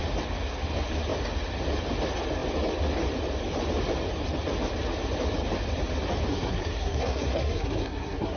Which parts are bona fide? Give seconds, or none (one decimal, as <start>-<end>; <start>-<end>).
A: 0.0-6.3